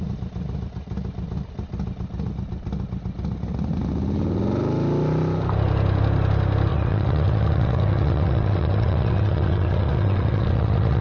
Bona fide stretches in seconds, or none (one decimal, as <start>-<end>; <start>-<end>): 0.0-6.7